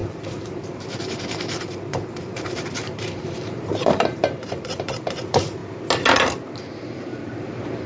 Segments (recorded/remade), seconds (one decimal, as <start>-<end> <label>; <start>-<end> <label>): 0.0-5.6 remade; 5.6-6.6 recorded; 6.6-7.9 remade